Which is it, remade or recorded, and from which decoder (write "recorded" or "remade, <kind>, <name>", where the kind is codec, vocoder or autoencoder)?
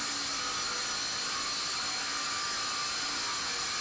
recorded